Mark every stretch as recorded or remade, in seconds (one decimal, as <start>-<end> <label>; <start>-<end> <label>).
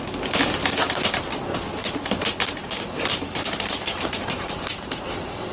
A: 0.0-1.8 recorded; 1.8-5.1 remade; 5.1-5.5 recorded